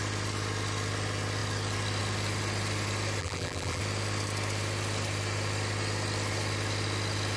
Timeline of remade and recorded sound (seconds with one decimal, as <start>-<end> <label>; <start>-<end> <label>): 0.0-3.2 recorded; 3.2-3.8 remade; 3.8-7.4 recorded